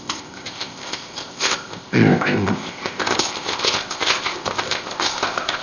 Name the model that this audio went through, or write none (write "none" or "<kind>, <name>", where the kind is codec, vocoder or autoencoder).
codec, ZipCodec